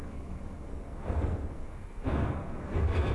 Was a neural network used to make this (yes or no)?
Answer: yes